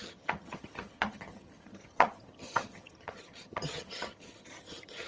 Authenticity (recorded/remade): remade